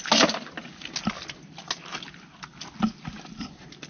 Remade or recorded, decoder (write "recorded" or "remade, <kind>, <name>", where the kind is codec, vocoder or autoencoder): recorded